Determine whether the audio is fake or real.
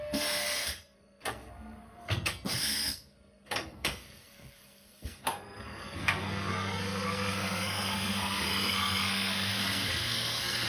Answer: fake